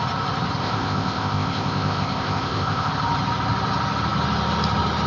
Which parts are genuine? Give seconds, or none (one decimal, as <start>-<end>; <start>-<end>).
0.0-0.6; 2.9-5.1